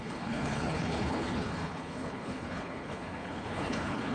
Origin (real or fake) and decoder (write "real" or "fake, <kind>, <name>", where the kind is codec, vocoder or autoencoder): fake, codec, HILCodec